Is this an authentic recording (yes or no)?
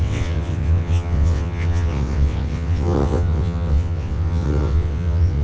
no